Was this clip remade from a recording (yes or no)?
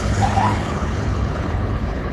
yes